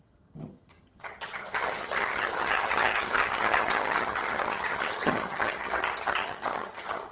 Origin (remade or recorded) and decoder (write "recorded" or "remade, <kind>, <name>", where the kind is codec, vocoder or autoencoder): remade, vocoder, HiFi-GAN